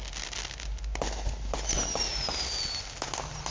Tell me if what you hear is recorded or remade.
recorded